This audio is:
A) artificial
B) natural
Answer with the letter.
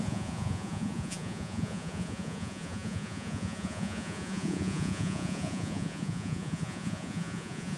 A